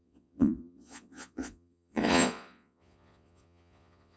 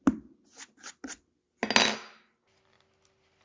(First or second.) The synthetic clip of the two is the first